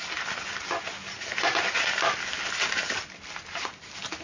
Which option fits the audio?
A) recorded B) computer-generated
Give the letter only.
A